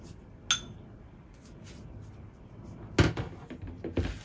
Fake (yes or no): no